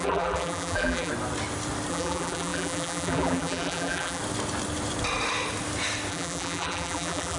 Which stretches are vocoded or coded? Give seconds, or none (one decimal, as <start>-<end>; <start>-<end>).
0.0-1.1; 1.9-4.2; 6.1-7.4